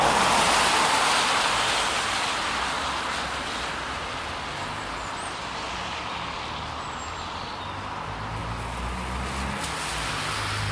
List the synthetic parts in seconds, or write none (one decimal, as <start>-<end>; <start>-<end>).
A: none